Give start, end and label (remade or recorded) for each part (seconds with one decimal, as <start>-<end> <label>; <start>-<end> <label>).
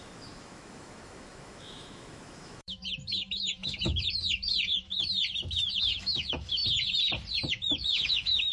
0.0-4.9 remade; 4.9-5.8 recorded; 5.8-6.6 remade; 6.6-7.5 recorded; 7.5-8.5 remade